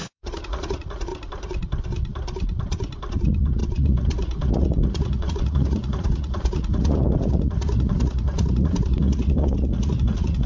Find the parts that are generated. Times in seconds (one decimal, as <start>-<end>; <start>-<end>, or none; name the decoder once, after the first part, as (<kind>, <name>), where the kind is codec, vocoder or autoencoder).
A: 0.0-1.1 (vocoder, Vocos); 3.1-10.5